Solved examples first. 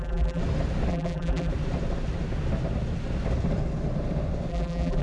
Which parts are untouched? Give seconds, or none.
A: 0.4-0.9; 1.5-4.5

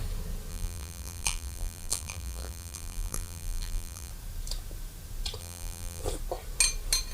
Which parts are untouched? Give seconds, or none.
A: 0.0-0.5; 4.1-5.4; 6.0-7.1

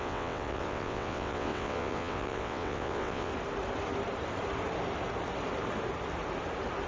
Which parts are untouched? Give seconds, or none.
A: 3.3-6.9

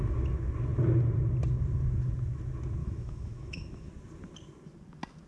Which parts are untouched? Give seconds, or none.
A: 0.0-2.8; 3.9-5.3